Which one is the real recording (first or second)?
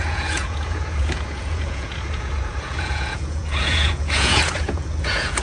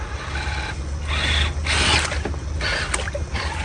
second